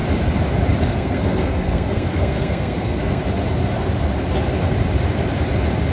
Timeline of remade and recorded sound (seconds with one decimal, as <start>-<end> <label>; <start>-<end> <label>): 0.0-0.8 recorded; 0.8-3.2 remade; 3.2-5.9 recorded